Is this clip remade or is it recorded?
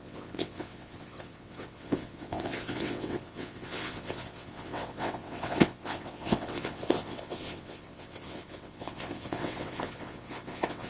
remade